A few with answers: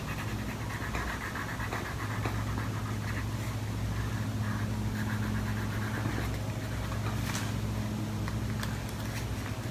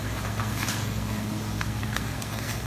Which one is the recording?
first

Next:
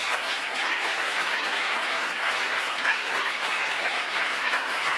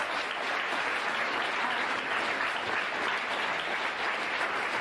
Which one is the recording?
second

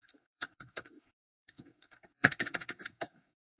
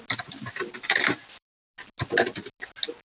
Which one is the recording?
second